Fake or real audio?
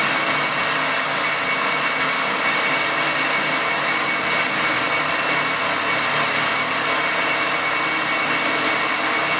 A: real